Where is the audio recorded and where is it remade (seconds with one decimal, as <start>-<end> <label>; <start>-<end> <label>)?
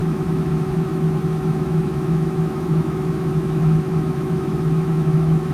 0.0-5.5 remade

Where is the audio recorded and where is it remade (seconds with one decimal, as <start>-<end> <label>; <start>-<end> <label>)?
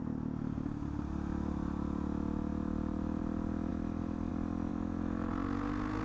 0.0-4.7 recorded; 4.7-5.3 remade; 5.3-6.0 recorded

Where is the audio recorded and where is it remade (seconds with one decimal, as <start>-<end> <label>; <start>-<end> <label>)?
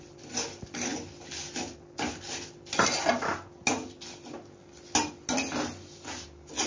0.0-6.7 recorded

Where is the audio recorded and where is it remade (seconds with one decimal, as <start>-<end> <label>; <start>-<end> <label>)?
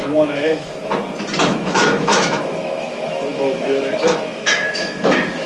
0.0-0.7 remade; 0.7-1.4 recorded; 1.4-5.5 remade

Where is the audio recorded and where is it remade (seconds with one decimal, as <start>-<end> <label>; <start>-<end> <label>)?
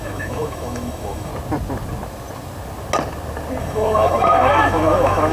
0.0-1.3 remade; 1.3-3.6 recorded; 3.6-5.3 remade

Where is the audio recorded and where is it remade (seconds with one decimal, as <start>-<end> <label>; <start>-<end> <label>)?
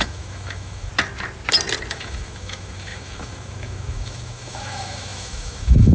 0.0-0.9 remade; 0.9-1.9 recorded; 1.9-5.9 remade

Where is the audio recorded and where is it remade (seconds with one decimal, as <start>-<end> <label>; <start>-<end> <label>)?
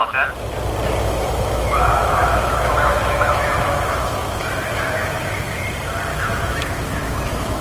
0.0-1.0 recorded; 1.0-5.6 remade; 5.6-6.1 recorded; 6.1-7.6 remade